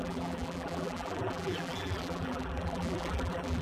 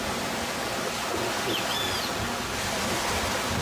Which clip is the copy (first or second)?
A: first